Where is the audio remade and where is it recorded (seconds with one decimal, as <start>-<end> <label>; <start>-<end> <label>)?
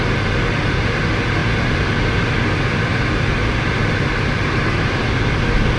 0.0-1.4 recorded; 1.4-2.3 remade; 2.3-2.9 recorded; 2.9-5.0 remade; 5.0-5.8 recorded